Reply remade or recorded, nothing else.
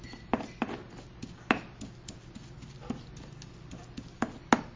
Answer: recorded